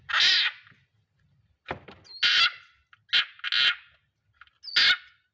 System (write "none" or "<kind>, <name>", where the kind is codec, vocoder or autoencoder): none